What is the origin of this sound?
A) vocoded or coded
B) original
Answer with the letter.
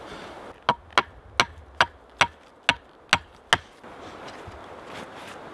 B